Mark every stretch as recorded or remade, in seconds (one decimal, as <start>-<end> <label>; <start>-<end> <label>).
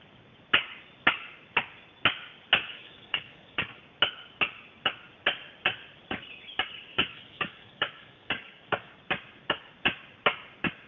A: 0.0-2.7 recorded; 2.7-3.8 remade; 3.8-6.9 recorded; 6.9-9.0 remade; 9.0-10.9 recorded